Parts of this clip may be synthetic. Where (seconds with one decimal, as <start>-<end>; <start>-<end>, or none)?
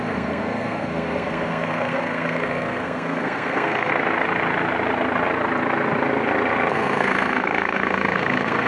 0.0-3.9; 6.7-8.7